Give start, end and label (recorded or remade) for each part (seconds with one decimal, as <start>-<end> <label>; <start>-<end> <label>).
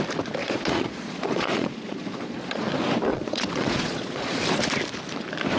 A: 0.0-0.4 recorded; 0.4-2.7 remade; 2.7-3.1 recorded; 3.1-4.4 remade; 4.4-5.6 recorded